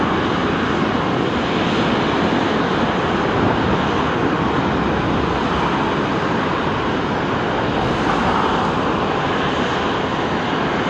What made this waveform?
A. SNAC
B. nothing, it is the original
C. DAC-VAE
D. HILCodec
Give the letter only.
B